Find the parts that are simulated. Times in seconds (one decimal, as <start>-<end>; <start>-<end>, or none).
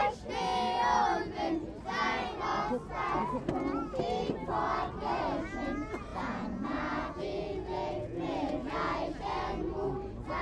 6.1-9.2